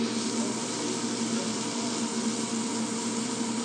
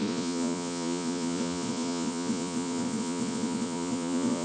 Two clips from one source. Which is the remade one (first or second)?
second